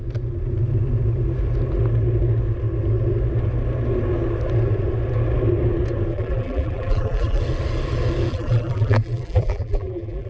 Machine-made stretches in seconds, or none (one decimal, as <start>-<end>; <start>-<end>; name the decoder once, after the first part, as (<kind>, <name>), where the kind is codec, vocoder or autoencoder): 6.1-7.4 (vocoder, BigVGAN v2); 8.3-10.3